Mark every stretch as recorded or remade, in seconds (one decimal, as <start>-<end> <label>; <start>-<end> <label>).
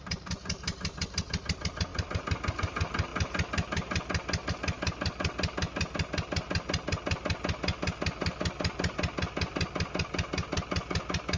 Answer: 0.0-11.4 recorded